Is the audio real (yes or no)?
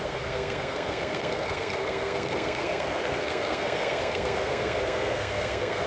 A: no